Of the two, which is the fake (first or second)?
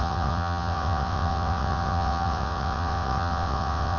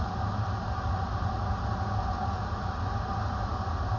first